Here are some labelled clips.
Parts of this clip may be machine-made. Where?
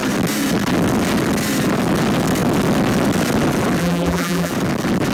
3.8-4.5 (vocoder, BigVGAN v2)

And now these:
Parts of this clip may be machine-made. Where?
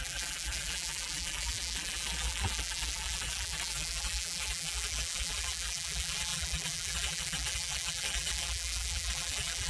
0.0-9.7 (vocoder, BigVGAN v2)